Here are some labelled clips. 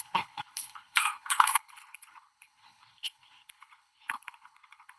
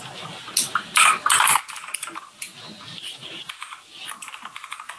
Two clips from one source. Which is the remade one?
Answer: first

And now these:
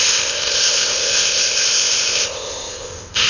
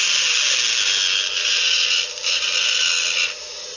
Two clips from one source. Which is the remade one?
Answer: first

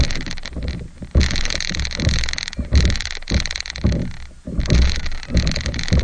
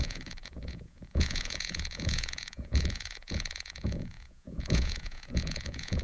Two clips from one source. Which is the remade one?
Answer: second